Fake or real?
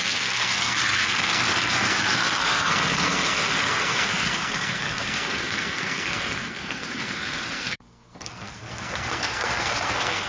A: fake